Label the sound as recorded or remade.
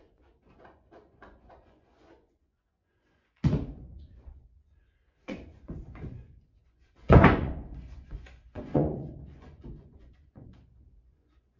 remade